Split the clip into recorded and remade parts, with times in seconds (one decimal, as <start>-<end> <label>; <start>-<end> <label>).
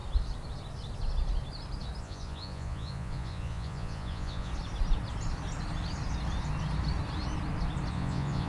0.0-2.0 recorded; 2.0-4.5 remade; 4.5-7.9 recorded; 7.9-8.5 remade